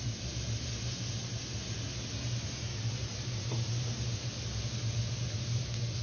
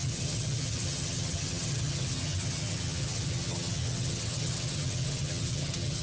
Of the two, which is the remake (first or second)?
second